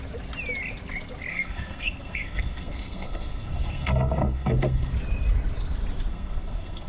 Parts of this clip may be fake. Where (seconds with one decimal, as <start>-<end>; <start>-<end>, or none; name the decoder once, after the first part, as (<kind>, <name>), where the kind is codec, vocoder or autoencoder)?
1.3-4.9 (codec, SNAC); 6.1-6.9